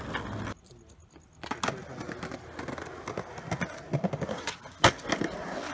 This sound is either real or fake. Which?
real